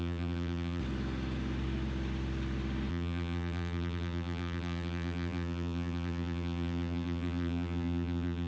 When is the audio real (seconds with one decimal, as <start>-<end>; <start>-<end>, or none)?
0.8-2.9